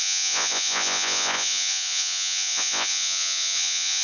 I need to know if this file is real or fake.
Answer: fake